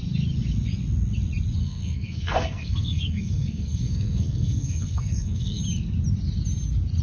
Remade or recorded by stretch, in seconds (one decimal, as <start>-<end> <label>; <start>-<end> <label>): 0.0-1.6 recorded; 1.6-5.6 remade; 5.6-7.0 recorded